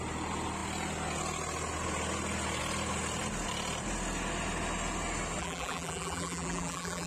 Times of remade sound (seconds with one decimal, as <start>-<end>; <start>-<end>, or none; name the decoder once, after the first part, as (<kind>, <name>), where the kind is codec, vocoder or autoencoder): 5.4-7.1 (vocoder, BigVGAN v2)